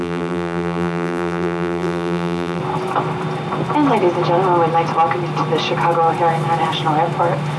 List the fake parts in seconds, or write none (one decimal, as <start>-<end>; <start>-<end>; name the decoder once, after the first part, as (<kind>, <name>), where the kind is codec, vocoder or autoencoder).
0.0-2.6 (vocoder, BigVGAN v2)